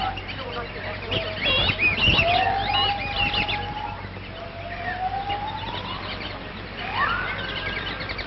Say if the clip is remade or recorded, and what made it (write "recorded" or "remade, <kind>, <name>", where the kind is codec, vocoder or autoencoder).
recorded